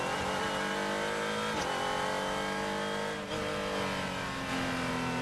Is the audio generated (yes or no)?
no